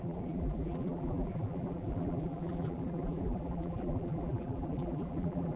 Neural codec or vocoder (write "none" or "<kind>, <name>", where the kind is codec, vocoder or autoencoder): vocoder, BigVGAN v2